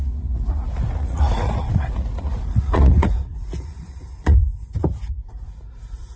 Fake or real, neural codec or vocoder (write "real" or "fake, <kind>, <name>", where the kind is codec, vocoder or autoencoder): fake, vocoder, Vocos